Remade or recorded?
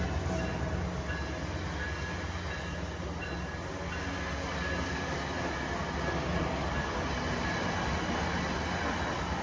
recorded